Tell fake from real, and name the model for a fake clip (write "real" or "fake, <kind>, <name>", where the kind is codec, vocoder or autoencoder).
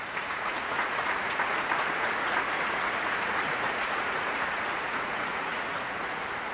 fake, vocoder, Vocos